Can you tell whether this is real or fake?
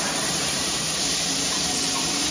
fake